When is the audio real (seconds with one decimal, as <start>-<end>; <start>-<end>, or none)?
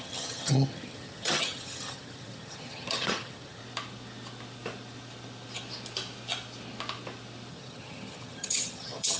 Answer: 3.6-7.5